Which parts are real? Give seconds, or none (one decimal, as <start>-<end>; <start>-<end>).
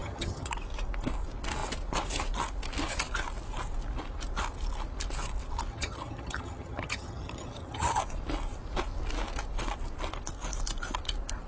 0.5-5.7; 8.0-11.5